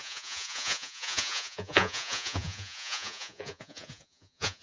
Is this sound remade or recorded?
remade